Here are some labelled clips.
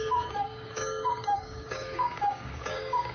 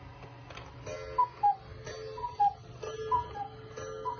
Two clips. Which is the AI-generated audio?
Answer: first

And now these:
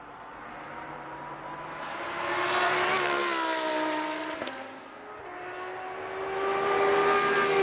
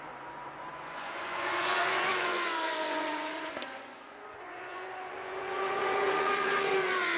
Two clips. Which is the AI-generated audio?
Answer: second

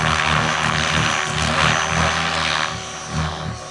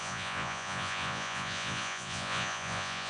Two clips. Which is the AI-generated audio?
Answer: second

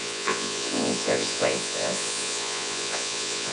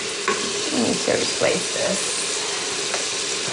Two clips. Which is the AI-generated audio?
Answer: first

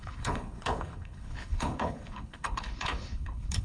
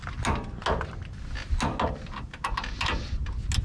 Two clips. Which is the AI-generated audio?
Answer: first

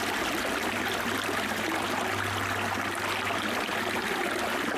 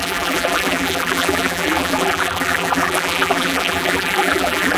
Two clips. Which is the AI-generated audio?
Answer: second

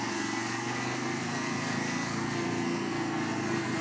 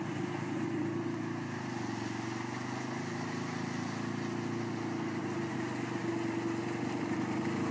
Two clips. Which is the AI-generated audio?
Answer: first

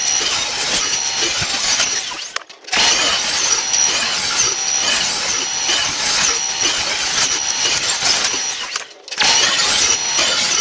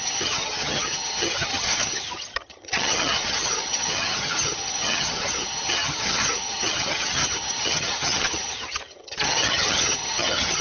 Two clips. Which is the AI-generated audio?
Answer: second